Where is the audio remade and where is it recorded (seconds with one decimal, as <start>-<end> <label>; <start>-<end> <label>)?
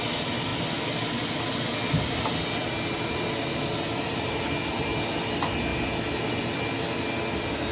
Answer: 0.0-7.7 recorded